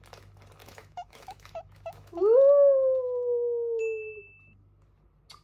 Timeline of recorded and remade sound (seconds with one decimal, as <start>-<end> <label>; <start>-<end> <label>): 0.0-0.6 recorded; 0.6-3.8 remade; 3.8-5.4 recorded